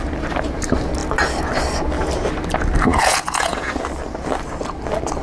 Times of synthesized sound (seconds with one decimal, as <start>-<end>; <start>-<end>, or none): 2.9-3.7